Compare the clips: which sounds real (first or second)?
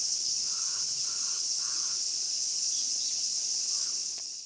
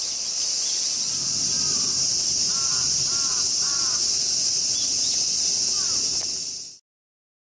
second